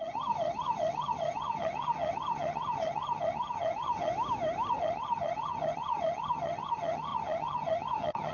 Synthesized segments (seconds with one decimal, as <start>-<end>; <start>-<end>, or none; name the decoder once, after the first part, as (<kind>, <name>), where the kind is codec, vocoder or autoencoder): 0.0-4.1 (vocoder, HiFi-GAN); 4.7-8.3